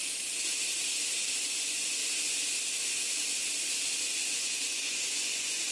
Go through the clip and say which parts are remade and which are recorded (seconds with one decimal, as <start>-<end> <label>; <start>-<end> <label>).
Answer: 0.0-1.5 recorded; 1.5-2.0 remade; 2.0-4.0 recorded; 4.0-5.7 remade